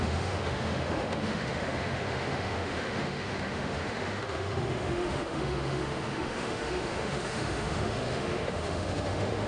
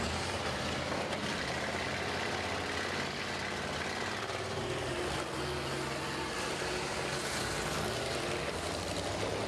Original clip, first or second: second